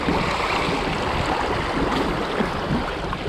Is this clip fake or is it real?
real